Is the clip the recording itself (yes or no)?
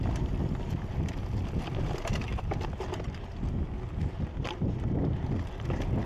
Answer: yes